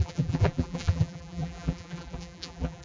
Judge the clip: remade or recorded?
remade